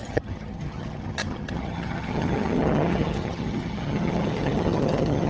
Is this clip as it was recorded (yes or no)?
no